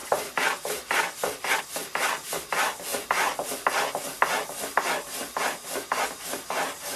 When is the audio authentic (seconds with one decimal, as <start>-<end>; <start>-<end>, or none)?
0.0-7.0